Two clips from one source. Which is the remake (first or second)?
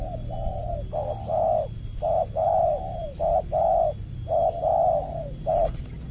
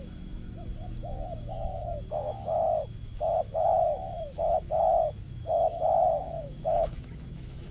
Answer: second